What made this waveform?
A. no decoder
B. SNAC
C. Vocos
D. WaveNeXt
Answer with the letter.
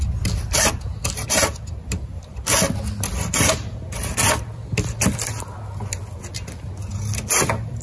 A